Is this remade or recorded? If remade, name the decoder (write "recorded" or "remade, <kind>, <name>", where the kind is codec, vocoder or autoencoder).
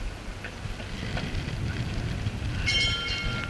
recorded